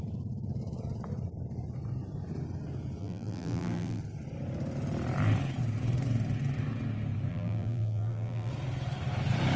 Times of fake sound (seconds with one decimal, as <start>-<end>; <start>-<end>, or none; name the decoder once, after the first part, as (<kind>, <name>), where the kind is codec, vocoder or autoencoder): 3.0-4.0 (vocoder, BigVGAN v2); 7.3-8.5